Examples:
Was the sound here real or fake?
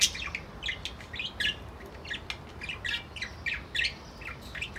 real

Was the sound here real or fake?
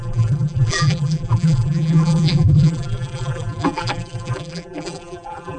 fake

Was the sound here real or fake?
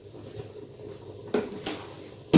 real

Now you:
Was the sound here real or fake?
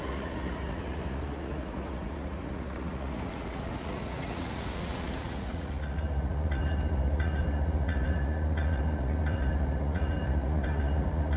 fake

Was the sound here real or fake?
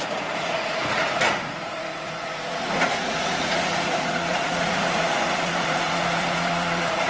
fake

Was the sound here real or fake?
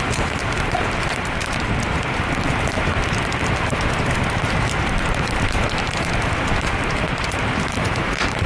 fake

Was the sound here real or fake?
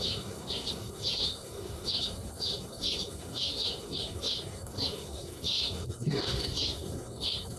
fake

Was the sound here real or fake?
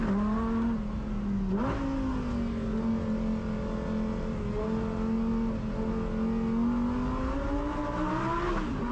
real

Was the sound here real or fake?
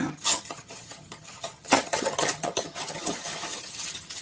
fake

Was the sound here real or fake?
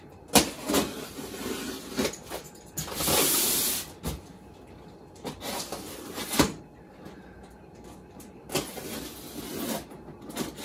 real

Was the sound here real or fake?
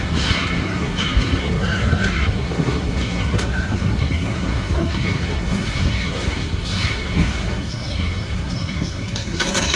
fake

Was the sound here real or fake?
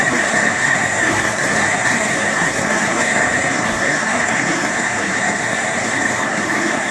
fake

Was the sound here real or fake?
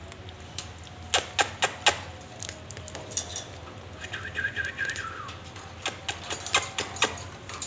real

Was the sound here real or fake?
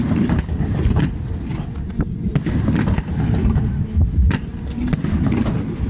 real